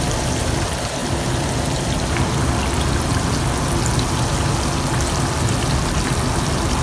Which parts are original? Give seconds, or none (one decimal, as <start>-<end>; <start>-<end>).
0.0-6.8